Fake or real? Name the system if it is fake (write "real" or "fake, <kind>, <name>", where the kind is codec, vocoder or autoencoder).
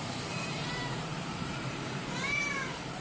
fake, vocoder, BigVGAN v2